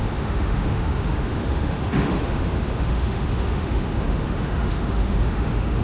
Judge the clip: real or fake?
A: fake